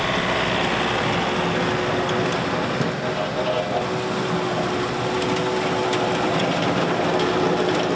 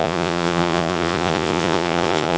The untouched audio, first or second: first